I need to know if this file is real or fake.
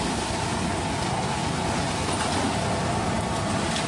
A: real